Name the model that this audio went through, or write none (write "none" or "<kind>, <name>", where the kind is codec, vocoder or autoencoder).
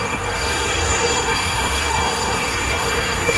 codec, SNAC